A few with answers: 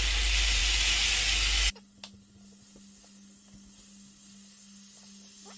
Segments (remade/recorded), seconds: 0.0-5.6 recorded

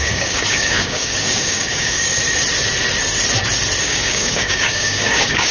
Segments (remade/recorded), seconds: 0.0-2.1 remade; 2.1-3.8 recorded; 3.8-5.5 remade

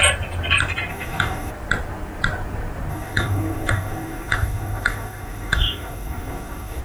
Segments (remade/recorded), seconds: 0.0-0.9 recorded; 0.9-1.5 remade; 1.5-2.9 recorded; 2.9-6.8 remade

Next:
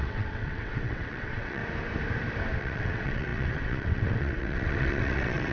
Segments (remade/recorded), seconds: 0.0-1.6 remade; 1.6-2.6 recorded; 2.6-5.5 remade